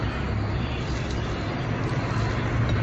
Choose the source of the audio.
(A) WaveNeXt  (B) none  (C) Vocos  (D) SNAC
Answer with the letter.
B